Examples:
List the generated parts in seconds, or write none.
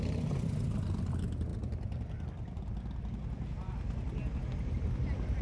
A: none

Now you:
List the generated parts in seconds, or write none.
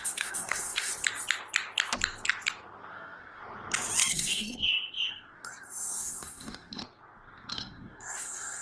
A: 0.0-0.9 (codec, SNAC); 2.9-3.4; 4.1-4.6; 5.1-6.8; 7.5-8.6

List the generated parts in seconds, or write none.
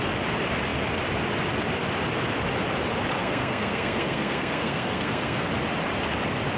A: 3.2-5.5 (codec, SNAC)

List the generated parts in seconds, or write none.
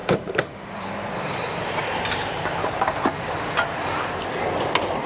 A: 0.0-3.1 (vocoder, BigVGAN v2)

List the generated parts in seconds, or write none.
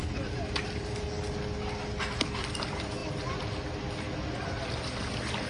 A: none